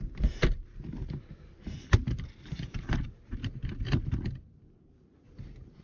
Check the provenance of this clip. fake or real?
real